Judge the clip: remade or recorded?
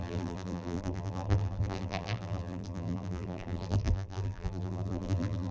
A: remade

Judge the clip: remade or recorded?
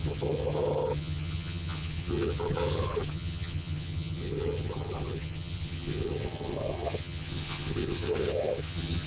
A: remade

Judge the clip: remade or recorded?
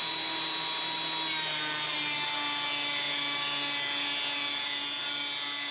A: recorded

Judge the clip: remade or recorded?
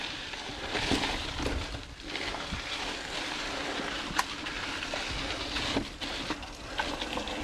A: recorded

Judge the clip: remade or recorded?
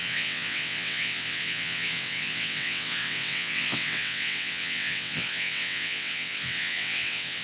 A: remade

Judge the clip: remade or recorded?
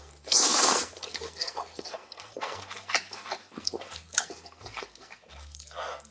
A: remade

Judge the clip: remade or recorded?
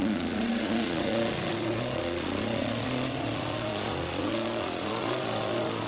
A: remade